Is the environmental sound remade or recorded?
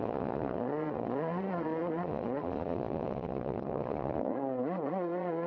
remade